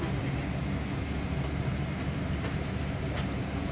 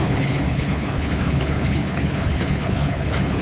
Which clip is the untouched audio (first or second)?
first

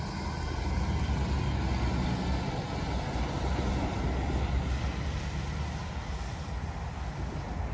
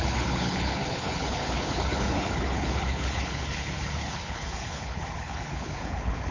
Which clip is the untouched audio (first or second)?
first